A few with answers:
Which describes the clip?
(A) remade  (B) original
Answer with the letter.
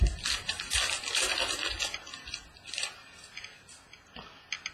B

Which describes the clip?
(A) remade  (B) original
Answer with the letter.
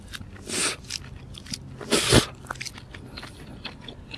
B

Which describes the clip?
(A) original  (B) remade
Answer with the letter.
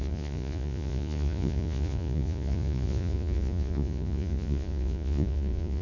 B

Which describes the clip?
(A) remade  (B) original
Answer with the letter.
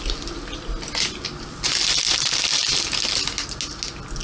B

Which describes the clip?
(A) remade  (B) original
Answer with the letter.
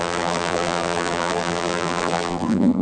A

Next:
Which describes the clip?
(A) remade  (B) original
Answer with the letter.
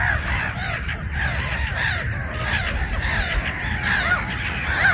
B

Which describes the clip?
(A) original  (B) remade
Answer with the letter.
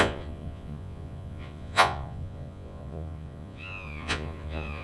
B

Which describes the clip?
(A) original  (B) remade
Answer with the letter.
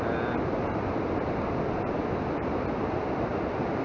A